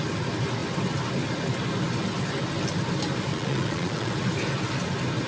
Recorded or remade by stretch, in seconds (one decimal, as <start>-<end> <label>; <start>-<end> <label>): 0.0-3.3 recorded; 3.3-4.1 remade; 4.1-5.3 recorded